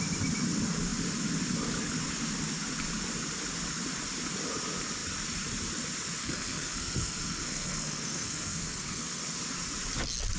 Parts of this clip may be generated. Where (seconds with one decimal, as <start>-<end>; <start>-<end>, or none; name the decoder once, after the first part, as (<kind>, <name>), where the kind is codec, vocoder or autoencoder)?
6.2-9.2 (codec, SNAC)